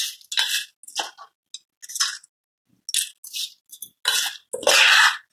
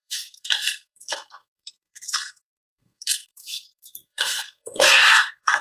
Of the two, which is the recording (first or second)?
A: first